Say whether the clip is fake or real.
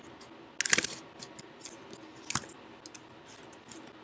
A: real